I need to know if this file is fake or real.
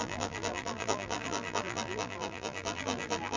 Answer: fake